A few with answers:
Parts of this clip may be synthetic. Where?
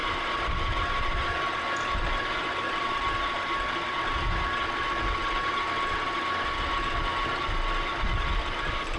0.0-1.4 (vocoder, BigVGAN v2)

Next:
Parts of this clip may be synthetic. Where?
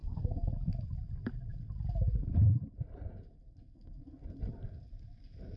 0.0-0.5 (codec, SNAC)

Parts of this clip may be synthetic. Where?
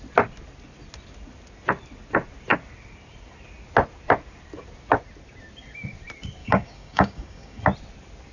6.4-7.6 (codec, DAC)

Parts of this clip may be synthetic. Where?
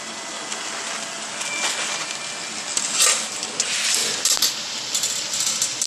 none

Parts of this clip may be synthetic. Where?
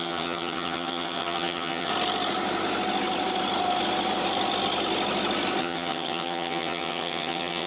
0.0-1.9 (vocoder, HiFi-GAN); 5.6-7.7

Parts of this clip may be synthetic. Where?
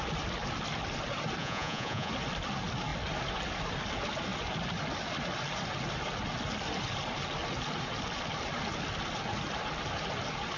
1.4-2.1 (vocoder, Vocos)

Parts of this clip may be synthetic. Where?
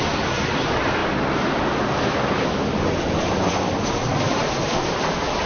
none